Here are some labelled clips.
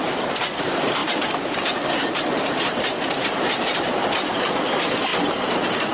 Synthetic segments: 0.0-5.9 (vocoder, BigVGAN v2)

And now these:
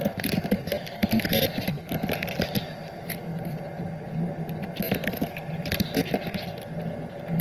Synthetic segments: none

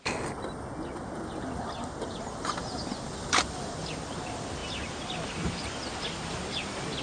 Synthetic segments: 4.6-5.6 (vocoder, BigVGAN v2)

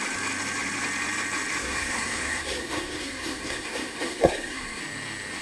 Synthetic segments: 1.6-4.8 (codec, SNAC)